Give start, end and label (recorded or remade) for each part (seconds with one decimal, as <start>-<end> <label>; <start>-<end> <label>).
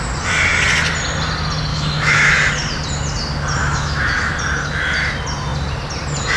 0.0-1.7 recorded; 1.7-2.3 remade; 2.3-3.6 recorded; 3.6-4.3 remade; 4.3-6.4 recorded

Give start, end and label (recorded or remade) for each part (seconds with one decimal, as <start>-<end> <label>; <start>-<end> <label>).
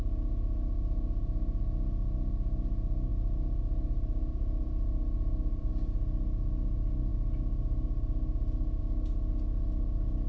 0.0-3.1 recorded; 3.1-5.7 remade; 5.7-10.3 recorded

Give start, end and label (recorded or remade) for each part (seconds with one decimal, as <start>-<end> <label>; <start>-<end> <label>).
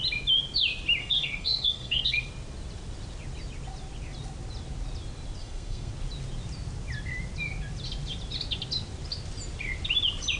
0.0-1.0 recorded; 1.0-2.3 remade; 2.3-5.4 recorded; 5.4-5.9 remade; 5.9-10.4 recorded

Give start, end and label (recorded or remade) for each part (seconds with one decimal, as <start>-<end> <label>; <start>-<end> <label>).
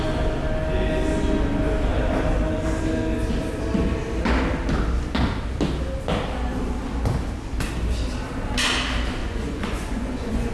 0.0-9.2 recorded; 9.2-10.5 remade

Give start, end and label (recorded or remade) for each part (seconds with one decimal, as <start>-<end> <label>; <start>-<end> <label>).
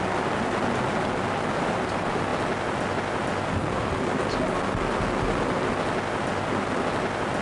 0.0-7.4 recorded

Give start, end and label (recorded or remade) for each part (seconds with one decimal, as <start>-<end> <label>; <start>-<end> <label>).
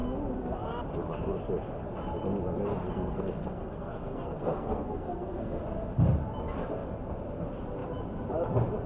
0.0-2.8 recorded; 2.8-5.6 remade; 5.6-8.9 recorded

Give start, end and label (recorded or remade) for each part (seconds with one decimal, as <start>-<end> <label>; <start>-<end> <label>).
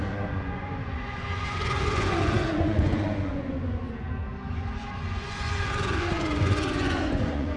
0.0-3.8 remade; 3.8-4.5 recorded; 4.5-7.6 remade